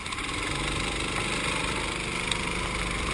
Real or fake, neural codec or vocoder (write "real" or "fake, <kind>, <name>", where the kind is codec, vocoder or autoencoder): real